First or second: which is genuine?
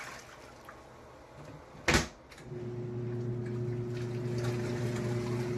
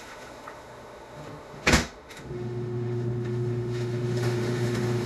first